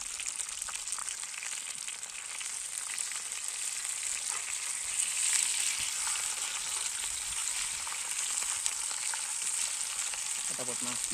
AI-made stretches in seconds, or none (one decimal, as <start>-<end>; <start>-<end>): none